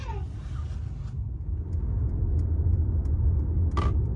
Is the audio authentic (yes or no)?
yes